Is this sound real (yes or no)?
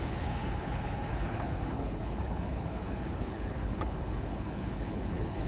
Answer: no